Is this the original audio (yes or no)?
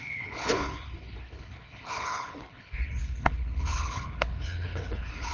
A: no